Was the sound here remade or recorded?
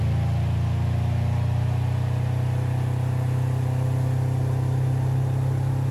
recorded